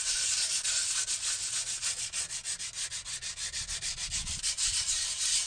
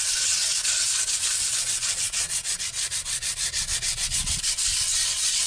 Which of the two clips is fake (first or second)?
second